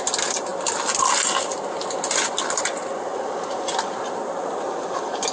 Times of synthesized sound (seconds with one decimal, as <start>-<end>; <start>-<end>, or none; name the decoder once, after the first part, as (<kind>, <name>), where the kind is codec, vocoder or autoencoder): none